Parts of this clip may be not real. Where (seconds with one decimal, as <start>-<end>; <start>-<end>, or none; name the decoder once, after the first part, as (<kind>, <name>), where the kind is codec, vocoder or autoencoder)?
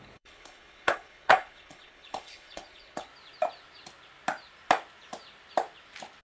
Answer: 0.0-3.1 (codec, HILCodec)